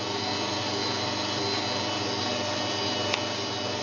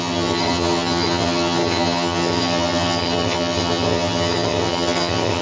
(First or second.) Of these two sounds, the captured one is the first